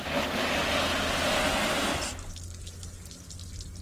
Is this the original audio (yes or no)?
yes